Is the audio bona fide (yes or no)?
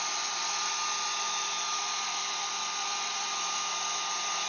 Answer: yes